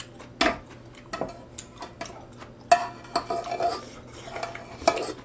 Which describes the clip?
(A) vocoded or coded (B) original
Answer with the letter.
B